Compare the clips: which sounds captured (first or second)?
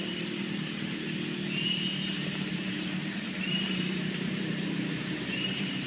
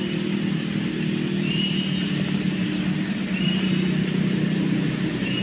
second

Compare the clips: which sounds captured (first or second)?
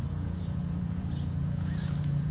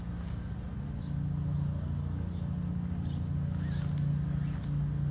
second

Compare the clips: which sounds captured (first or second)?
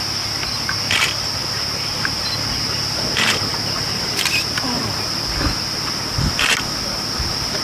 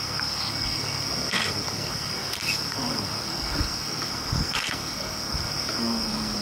first